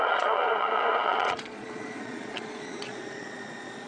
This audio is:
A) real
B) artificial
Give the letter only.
B